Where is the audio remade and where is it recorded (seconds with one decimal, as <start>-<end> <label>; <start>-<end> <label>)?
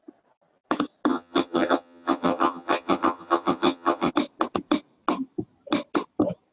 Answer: 0.0-1.1 recorded; 1.1-4.1 remade; 4.1-6.5 recorded